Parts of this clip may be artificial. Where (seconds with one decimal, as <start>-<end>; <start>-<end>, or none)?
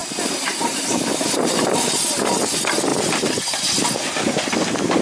0.0-1.5